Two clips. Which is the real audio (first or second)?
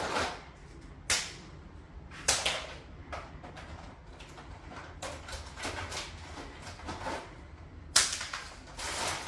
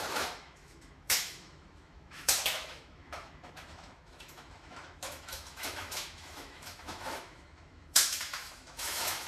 first